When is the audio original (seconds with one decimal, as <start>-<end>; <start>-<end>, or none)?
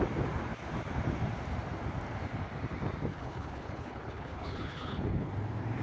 0.0-3.1; 5.3-5.8